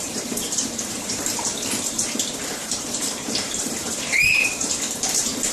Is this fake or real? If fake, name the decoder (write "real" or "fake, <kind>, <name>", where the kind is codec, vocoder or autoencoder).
fake, vocoder, BigVGAN v2